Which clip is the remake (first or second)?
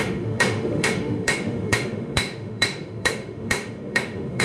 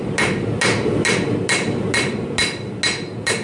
first